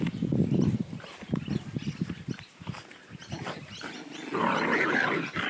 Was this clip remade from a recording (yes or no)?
no